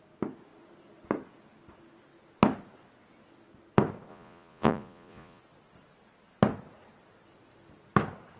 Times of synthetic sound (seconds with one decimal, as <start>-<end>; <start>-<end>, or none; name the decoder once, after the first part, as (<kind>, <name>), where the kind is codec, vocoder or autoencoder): 4.1-5.4 (vocoder, Vocos)